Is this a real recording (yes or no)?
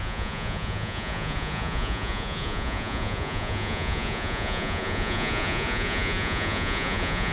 no